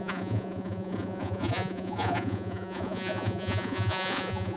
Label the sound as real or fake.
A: fake